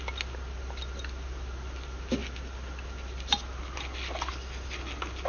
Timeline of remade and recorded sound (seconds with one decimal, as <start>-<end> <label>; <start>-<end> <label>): 0.0-5.3 recorded